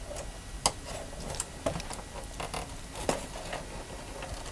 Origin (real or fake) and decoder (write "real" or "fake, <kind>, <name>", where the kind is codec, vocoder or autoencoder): real